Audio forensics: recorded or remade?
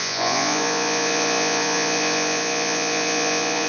remade